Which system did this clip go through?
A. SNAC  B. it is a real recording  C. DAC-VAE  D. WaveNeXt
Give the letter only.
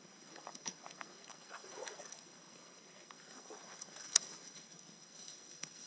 A